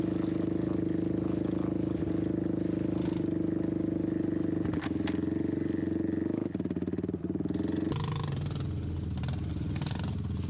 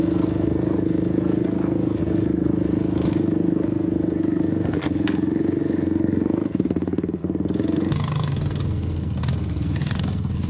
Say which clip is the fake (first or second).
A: second